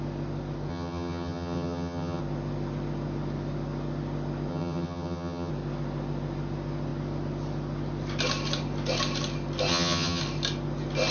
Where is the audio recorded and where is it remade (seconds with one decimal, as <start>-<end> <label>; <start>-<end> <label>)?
0.0-0.7 recorded; 0.7-2.2 remade; 2.2-4.5 recorded; 4.5-5.5 remade; 5.5-9.7 recorded; 9.7-10.2 remade; 10.2-11.1 recorded